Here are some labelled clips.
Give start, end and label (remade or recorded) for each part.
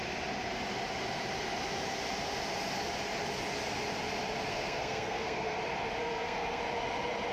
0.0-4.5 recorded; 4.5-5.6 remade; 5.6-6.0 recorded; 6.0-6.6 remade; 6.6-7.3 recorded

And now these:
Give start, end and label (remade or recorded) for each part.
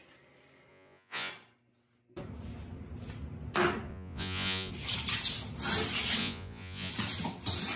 0.0-0.7 recorded; 0.7-1.3 remade; 1.3-3.9 recorded; 3.9-4.7 remade; 4.7-6.2 recorded; 6.2-6.9 remade; 6.9-7.8 recorded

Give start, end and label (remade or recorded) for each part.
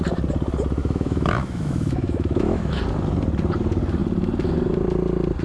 0.0-0.8 recorded; 0.8-2.8 remade; 2.8-5.4 recorded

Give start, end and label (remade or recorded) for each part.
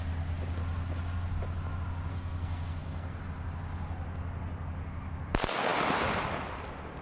0.0-2.1 recorded; 2.1-3.2 remade; 3.2-7.0 recorded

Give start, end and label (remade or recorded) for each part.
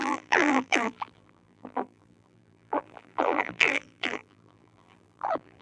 0.0-5.6 remade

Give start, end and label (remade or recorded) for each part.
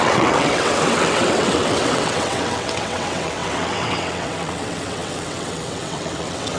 0.0-6.6 remade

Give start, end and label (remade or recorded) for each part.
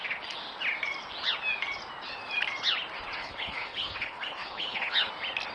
0.0-3.2 recorded; 3.2-5.1 remade; 5.1-5.5 recorded